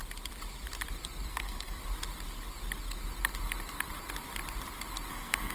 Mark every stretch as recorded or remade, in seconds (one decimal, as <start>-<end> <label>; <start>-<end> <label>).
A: 0.0-1.3 recorded; 1.3-1.8 remade; 1.8-5.1 recorded; 5.1-5.5 remade